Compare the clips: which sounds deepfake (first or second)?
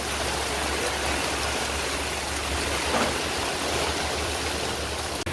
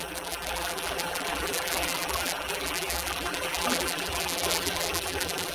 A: second